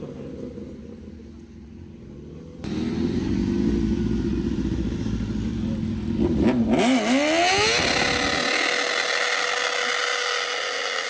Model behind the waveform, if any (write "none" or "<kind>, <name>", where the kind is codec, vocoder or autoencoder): none